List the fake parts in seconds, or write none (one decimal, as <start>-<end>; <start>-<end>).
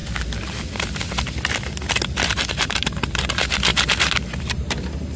2.5-5.2